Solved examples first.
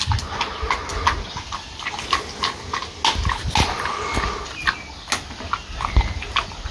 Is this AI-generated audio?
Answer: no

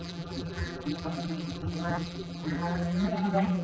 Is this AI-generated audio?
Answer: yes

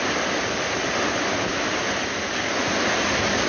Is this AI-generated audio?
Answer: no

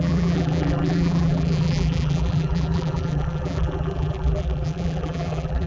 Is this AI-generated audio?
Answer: yes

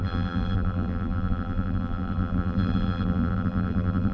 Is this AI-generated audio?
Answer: yes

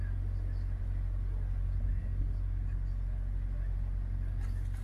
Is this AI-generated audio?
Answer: no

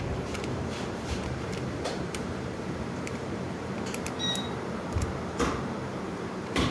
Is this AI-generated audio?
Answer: yes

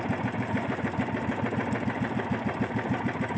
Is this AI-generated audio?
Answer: yes